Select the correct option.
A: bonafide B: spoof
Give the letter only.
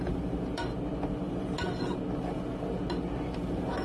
A